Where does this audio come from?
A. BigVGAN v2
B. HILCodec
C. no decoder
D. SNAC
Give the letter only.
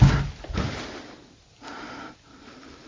C